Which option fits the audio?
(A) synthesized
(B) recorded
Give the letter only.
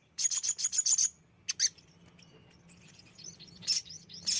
B